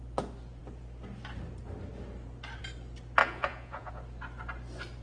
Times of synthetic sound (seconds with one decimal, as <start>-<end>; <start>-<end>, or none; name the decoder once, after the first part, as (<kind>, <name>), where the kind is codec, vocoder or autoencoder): 3.2-3.9 (vocoder, Vocos)